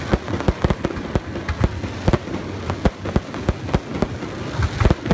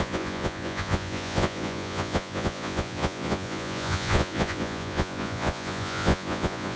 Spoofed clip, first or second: second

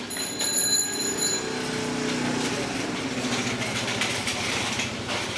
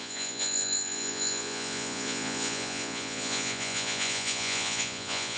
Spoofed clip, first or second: second